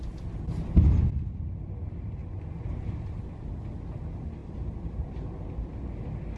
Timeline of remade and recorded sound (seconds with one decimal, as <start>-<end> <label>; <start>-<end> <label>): 0.0-2.2 recorded; 2.2-2.9 remade; 2.9-4.4 recorded; 4.4-5.3 remade; 5.3-6.4 recorded